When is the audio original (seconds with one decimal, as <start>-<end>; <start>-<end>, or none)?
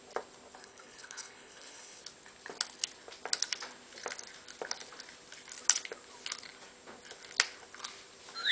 0.0-0.6; 2.0-8.5